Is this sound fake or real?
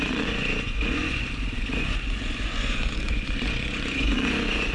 fake